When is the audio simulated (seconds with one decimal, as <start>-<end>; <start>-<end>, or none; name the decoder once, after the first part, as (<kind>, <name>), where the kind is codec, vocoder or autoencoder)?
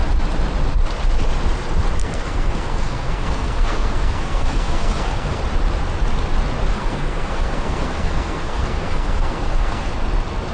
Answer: 2.0-5.4 (codec, SNAC); 6.7-9.9